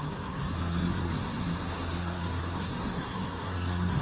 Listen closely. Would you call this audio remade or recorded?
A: remade